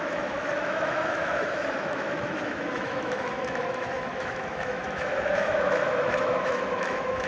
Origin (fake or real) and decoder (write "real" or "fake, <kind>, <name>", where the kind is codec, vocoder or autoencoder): fake, autoencoder, DAC-VAE